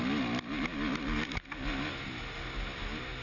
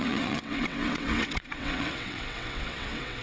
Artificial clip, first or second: second